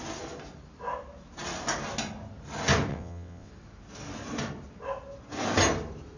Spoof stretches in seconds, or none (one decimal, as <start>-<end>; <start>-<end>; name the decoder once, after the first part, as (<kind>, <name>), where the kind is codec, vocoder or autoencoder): 2.9-3.5 (vocoder, WaveNeXt)